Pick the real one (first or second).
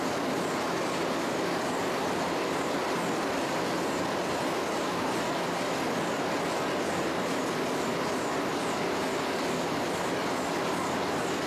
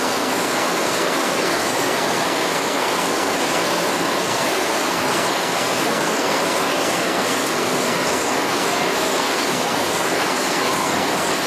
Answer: first